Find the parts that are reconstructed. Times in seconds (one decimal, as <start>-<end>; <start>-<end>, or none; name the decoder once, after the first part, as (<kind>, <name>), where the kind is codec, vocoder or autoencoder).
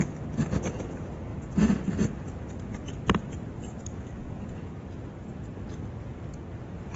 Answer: 4.2-5.0 (vocoder, Vocos)